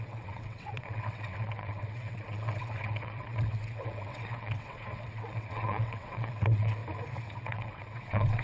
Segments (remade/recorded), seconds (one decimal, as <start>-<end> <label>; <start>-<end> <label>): 0.0-6.8 remade; 6.8-7.4 recorded; 7.4-8.4 remade